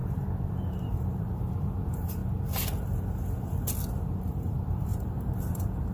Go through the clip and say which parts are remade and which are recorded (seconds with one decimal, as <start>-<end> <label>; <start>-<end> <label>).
0.0-2.2 remade; 2.2-4.3 recorded; 4.3-5.9 remade